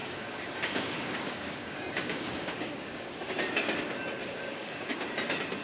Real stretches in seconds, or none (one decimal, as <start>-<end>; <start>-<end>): 3.3-4.2; 4.9-5.6

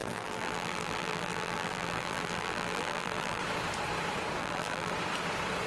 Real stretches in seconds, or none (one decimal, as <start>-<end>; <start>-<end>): 3.4-4.4; 4.9-5.7

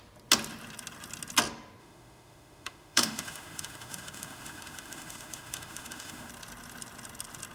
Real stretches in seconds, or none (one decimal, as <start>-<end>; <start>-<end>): 0.0-1.8; 6.3-7.5

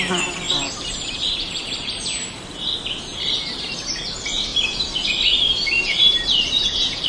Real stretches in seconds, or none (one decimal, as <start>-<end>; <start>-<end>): 4.5-5.8

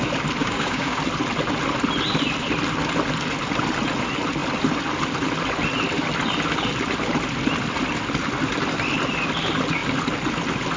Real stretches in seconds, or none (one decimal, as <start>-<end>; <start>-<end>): 0.0-0.4; 1.0-10.8